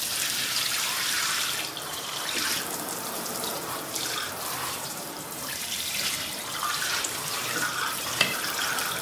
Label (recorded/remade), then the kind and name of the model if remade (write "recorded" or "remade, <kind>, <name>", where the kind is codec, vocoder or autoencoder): remade, vocoder, BigVGAN v2